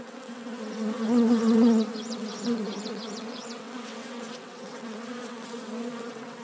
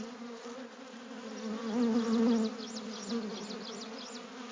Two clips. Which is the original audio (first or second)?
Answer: second